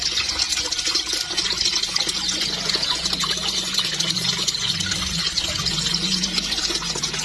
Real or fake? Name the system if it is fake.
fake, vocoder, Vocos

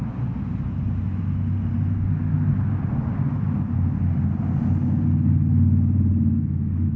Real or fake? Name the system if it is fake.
real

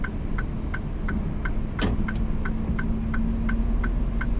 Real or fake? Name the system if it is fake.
real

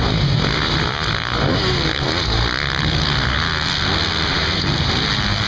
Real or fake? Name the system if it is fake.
real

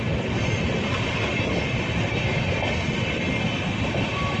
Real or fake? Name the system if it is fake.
real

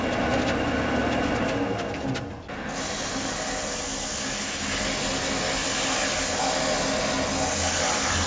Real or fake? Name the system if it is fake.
real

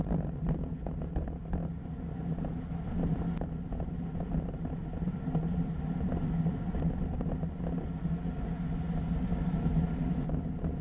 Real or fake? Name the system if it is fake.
real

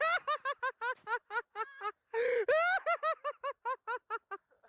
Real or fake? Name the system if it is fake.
real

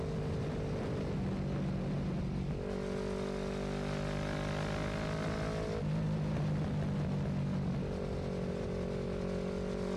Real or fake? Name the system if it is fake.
real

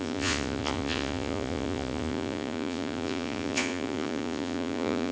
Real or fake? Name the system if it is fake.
fake, vocoder, Vocos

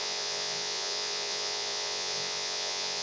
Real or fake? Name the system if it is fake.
fake, vocoder, Vocos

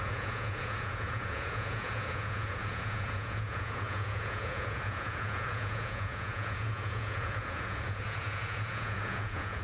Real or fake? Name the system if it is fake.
fake, vocoder, Vocos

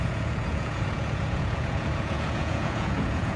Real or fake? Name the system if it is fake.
fake, vocoder, Vocos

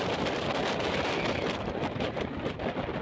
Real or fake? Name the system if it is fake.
real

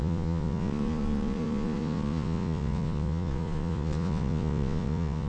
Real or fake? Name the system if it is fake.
fake, vocoder, Vocos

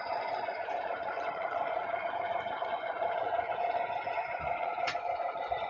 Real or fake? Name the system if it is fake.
fake, vocoder, Vocos